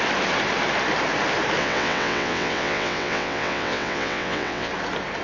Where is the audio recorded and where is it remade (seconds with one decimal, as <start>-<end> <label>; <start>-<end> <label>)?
0.0-1.6 recorded; 1.6-4.7 remade; 4.7-5.2 recorded